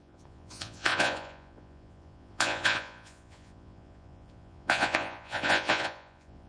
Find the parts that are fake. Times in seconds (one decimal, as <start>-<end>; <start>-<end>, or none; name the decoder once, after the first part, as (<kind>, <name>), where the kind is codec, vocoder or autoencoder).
0.0-6.5 (vocoder, Vocos)